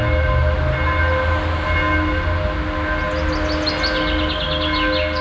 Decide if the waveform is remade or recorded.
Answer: recorded